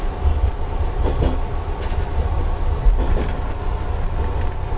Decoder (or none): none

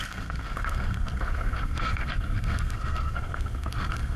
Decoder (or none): codec, SNAC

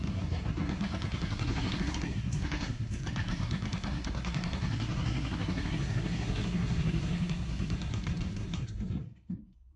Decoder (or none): codec, SNAC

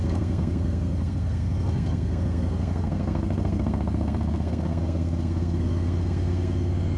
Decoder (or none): codec, SNAC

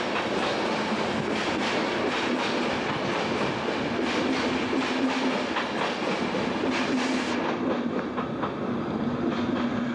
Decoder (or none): none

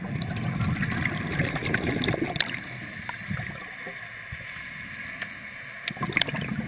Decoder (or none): none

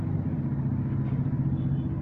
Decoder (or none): none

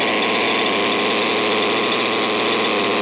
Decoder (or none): none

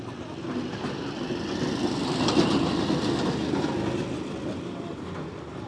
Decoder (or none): none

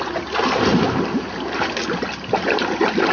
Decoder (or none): none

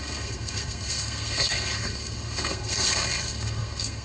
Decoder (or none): codec, SNAC